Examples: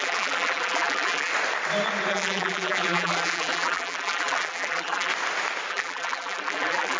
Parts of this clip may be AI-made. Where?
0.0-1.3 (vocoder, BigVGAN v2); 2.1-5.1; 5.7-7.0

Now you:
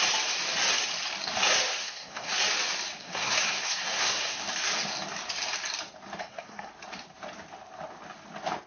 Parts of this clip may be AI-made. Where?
1.7-2.3 (codec, SNAC); 3.0-4.4; 6.2-6.7

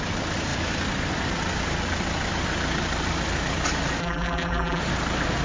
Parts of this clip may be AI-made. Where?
4.0-4.8 (vocoder, BigVGAN v2)

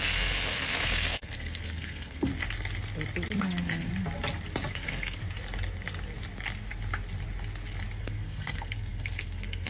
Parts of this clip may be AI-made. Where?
0.0-2.3 (codec, SNAC); 3.4-3.9; 4.7-5.2; 8.0-9.7